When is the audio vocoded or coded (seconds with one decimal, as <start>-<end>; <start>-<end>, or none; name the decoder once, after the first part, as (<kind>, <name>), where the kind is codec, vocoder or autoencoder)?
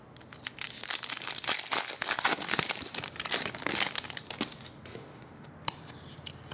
4.9-5.5 (autoencoder, DAC-VAE)